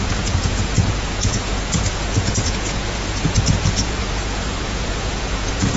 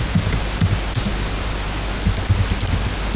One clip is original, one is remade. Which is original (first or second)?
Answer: second